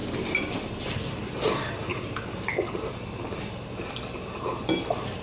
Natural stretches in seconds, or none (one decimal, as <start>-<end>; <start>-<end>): 0.0-5.2